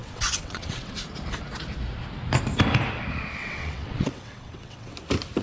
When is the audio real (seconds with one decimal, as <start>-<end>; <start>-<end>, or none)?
1.0-3.4; 4.9-5.4